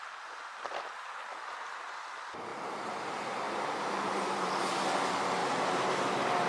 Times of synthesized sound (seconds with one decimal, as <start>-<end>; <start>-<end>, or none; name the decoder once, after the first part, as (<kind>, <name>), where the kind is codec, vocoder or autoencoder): 2.5-4.5 (vocoder, BigVGAN v2)